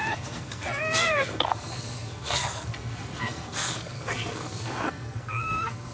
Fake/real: fake